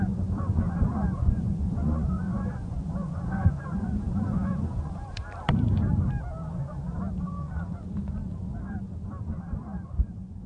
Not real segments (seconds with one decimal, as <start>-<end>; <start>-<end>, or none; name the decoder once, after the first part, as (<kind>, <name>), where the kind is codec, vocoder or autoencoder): 0.0-5.2 (vocoder, Vocos); 6.5-8.2; 9.2-10.5